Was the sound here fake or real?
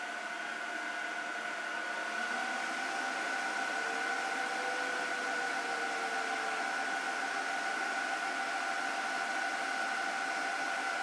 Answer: real